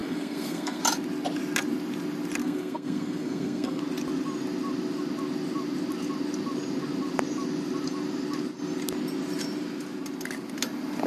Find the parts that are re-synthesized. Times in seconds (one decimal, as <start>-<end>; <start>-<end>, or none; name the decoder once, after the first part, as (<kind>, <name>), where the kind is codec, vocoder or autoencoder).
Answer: 0.0-0.8 (codec, SNAC); 2.4-3.8